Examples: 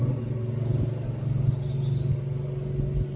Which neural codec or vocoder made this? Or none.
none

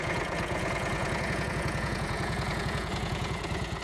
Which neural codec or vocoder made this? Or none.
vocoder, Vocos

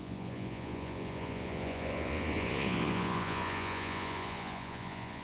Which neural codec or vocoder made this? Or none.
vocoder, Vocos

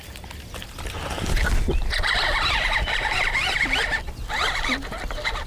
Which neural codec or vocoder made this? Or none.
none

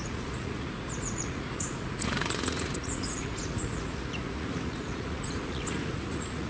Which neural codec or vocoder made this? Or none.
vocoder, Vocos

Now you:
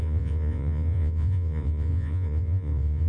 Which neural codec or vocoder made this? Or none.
vocoder, Vocos